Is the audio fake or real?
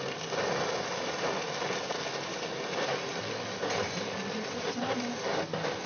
real